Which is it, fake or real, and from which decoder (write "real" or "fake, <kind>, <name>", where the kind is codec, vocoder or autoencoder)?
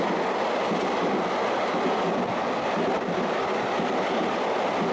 real